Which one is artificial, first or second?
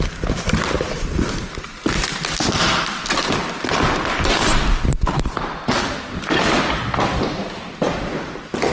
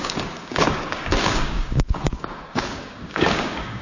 second